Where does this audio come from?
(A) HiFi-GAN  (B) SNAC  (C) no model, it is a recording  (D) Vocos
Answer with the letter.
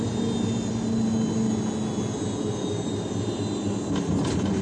C